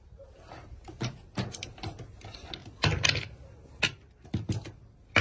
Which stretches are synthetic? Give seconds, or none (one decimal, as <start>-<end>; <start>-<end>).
none